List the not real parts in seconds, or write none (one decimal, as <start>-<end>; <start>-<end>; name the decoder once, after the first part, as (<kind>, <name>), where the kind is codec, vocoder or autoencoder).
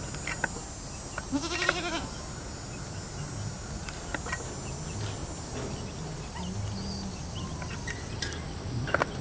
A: none